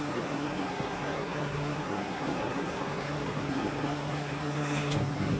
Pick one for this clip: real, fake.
fake